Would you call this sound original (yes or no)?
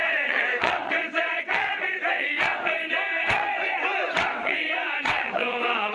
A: no